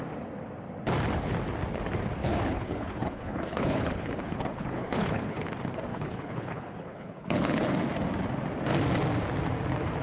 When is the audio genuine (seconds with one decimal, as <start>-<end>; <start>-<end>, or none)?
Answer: 0.0-2.2; 5.5-5.9; 7.7-10.0